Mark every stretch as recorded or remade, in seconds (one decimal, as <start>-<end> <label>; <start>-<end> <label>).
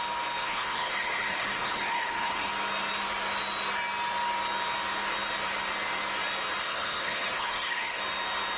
0.0-0.4 recorded; 0.4-2.5 remade; 2.5-6.6 recorded; 6.6-8.0 remade; 8.0-8.6 recorded